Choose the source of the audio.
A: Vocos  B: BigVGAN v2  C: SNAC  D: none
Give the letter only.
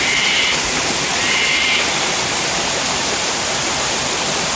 D